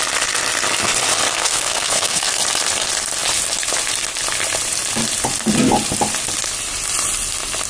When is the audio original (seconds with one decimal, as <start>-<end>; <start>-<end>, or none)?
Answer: 0.0-1.3; 2.3-7.7